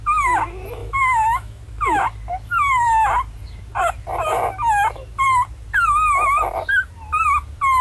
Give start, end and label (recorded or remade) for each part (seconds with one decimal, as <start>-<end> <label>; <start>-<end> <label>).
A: 0.0-0.8 recorded; 0.8-1.6 remade; 1.6-7.8 recorded